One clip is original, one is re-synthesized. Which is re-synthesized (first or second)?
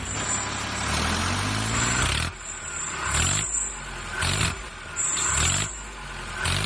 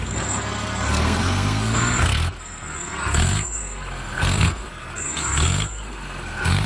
second